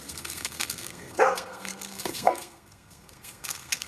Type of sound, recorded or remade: remade